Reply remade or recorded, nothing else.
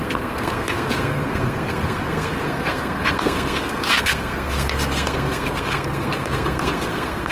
remade